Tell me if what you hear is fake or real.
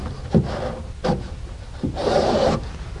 real